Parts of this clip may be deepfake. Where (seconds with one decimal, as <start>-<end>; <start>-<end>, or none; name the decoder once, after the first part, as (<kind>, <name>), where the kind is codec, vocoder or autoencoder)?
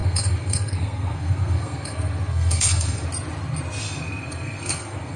0.0-3.1 (codec, SNAC); 3.8-5.2